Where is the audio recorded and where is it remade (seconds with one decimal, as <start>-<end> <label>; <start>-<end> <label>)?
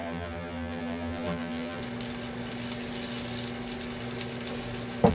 0.0-1.8 remade; 1.8-5.1 recorded